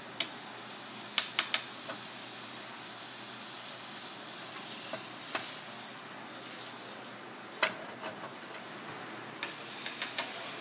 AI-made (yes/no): no